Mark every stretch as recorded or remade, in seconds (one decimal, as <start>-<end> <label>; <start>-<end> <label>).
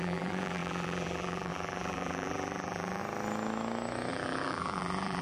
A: 0.0-3.0 remade; 3.0-4.1 recorded; 4.1-5.2 remade